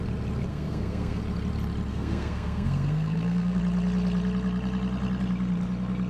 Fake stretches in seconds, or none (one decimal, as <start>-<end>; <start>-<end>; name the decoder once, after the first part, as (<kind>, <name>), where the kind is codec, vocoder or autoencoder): 0.5-1.2 (codec, SNAC); 1.9-3.6